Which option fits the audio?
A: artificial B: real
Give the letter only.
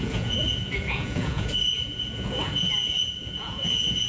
A